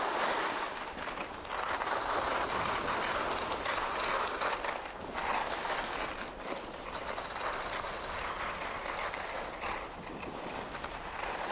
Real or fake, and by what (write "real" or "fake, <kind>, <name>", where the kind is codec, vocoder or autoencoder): real